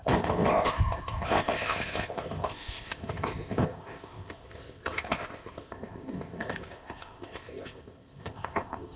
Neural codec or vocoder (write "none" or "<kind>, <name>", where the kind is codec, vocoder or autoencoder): codec, ZipCodec